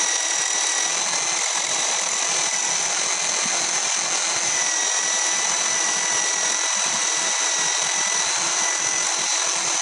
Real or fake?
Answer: real